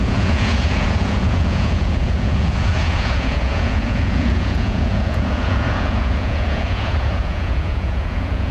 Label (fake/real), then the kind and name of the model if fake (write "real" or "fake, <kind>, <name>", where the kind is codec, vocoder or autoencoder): fake, vocoder, Vocos